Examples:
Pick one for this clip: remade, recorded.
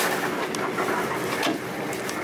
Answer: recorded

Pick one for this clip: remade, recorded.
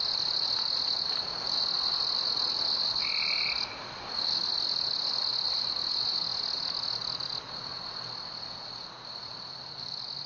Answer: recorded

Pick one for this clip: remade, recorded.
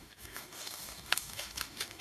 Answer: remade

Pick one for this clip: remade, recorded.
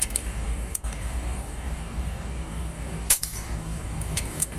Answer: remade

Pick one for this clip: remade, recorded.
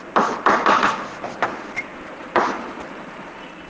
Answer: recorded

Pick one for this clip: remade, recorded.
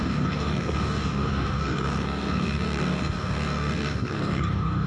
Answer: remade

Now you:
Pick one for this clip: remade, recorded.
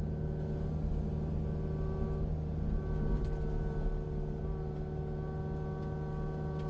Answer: recorded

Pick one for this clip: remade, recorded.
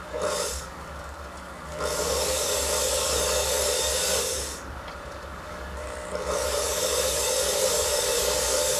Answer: remade